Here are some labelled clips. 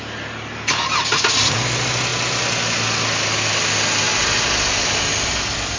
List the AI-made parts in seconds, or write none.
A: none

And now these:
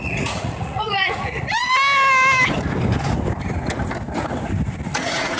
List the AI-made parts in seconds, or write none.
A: 0.0-1.6 (vocoder, Vocos); 4.8-5.4

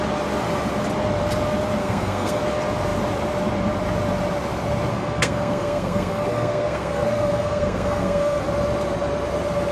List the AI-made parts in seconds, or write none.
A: 1.8-2.4 (codec, SNAC); 4.9-8.4

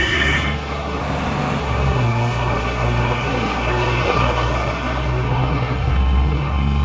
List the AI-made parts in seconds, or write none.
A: 0.0-1.0 (codec, SNAC); 1.6-6.8

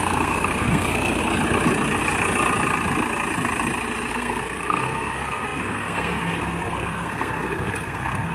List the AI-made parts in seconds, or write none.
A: 0.0-1.2 (codec, SNAC); 4.1-8.3